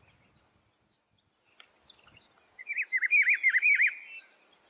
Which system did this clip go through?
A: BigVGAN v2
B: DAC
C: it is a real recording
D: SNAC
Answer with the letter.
C